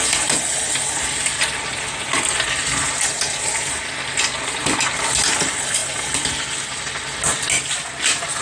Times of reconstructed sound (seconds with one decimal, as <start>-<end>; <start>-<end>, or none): none